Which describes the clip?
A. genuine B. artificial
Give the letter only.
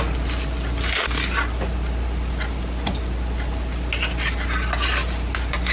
A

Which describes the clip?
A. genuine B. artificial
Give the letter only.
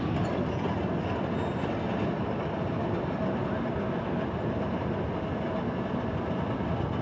A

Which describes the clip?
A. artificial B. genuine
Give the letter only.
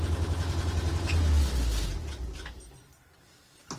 B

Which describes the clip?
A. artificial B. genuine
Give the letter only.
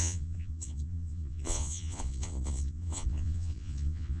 A